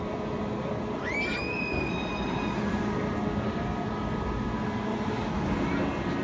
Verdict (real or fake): real